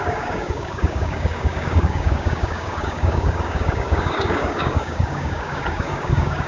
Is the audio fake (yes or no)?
yes